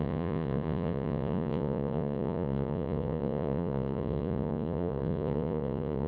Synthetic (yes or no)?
yes